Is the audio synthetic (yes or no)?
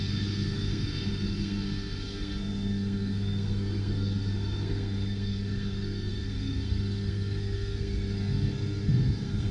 yes